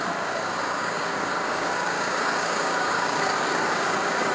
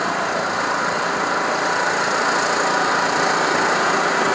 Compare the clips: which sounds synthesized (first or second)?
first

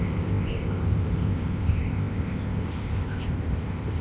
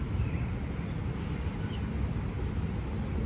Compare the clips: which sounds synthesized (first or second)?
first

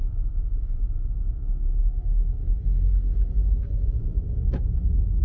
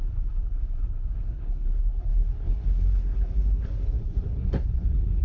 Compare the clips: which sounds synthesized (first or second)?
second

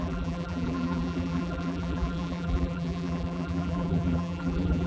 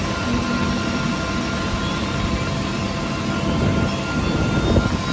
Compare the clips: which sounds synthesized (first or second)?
first